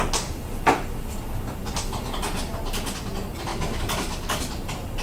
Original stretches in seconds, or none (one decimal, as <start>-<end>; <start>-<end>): 0.0-3.5; 4.5-5.0